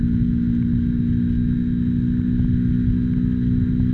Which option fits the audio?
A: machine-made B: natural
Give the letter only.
B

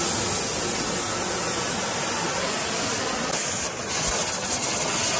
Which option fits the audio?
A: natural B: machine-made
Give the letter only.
A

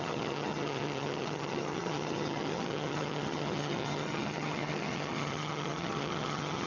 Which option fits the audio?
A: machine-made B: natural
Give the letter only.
A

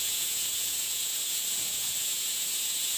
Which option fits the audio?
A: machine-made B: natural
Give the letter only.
A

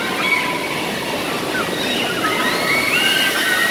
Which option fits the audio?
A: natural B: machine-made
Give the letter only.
A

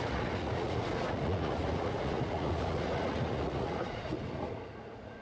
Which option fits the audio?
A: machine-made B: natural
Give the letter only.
A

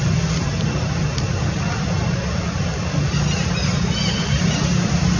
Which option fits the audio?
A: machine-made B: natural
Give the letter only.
B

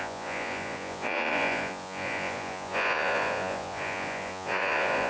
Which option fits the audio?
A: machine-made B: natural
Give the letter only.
A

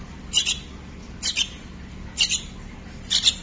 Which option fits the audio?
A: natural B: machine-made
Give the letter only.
A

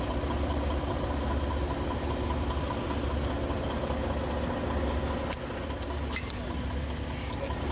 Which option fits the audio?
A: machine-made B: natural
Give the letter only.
B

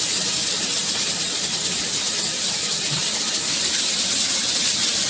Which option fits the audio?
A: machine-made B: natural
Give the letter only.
B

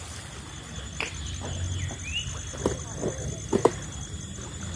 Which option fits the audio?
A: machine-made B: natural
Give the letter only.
B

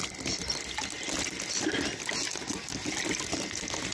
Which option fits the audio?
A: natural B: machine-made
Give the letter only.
A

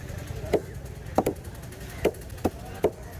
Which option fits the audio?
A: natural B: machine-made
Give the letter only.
A